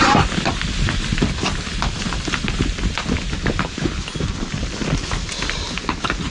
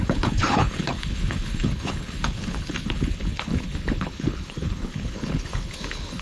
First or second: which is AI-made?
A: second